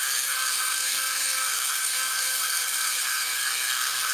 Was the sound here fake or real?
fake